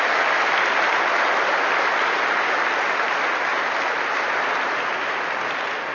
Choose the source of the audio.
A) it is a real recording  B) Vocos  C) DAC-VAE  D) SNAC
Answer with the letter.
A